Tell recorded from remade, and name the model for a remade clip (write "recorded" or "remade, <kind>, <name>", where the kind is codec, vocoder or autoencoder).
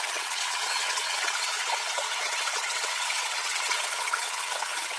remade, vocoder, WaveNeXt